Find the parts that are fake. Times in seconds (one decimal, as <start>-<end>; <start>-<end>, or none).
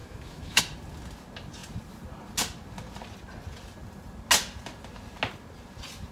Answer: 0.0-0.6